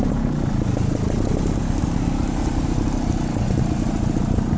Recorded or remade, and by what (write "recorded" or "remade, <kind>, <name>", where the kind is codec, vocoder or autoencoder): recorded